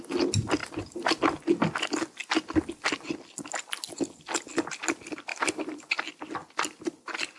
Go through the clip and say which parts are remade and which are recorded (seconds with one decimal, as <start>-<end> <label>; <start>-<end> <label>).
0.0-0.6 recorded; 0.6-1.2 remade; 1.2-5.3 recorded; 5.3-6.1 remade; 6.1-7.4 recorded

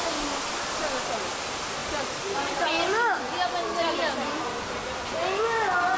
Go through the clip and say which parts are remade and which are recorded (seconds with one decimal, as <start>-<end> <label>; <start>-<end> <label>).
0.0-6.0 recorded

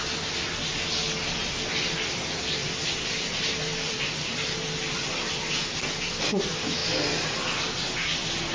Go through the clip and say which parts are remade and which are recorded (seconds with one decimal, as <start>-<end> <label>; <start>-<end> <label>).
0.0-1.4 recorded; 1.4-5.4 remade; 5.4-8.5 recorded

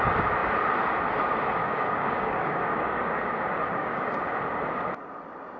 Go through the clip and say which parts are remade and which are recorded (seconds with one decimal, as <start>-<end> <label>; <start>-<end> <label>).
0.0-1.6 recorded; 1.6-3.2 remade; 3.2-3.7 recorded; 3.7-4.2 remade; 4.2-5.6 recorded